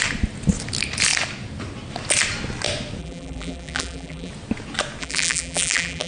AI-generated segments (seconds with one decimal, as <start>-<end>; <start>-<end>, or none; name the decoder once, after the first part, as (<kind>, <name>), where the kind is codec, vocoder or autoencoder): 3.0-4.3 (vocoder, BigVGAN v2); 5.0-6.1